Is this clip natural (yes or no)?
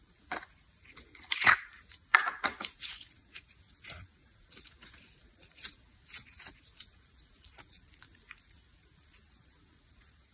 no